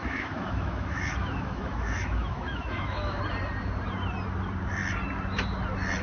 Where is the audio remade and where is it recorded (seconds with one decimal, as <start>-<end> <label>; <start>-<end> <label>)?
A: 0.0-3.2 remade; 3.2-6.0 recorded